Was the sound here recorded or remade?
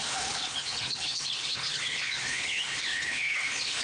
remade